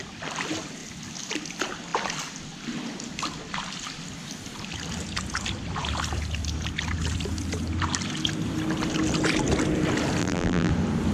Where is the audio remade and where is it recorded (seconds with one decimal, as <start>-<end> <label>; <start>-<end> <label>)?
0.0-10.2 recorded; 10.2-10.7 remade; 10.7-11.1 recorded